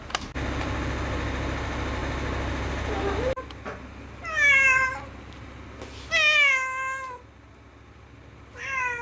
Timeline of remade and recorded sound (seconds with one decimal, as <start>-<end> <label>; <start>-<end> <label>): 0.0-9.0 recorded